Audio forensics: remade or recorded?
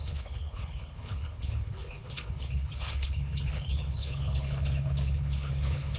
remade